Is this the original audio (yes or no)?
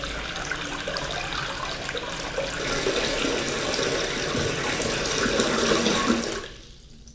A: yes